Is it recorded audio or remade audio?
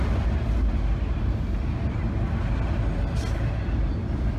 recorded